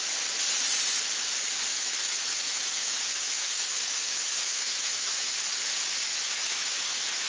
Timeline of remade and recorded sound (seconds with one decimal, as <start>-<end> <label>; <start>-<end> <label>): 0.0-1.7 recorded; 1.7-5.3 remade; 5.3-6.1 recorded; 6.1-7.3 remade